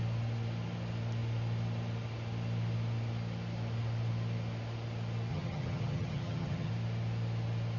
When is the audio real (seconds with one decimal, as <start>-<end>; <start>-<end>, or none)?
0.0-5.3; 6.7-7.8